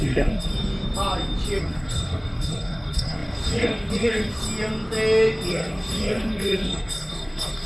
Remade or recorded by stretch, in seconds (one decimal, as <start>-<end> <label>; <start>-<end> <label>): 0.0-0.5 remade; 0.5-1.6 recorded; 1.6-4.4 remade; 4.4-5.5 recorded; 5.5-7.7 remade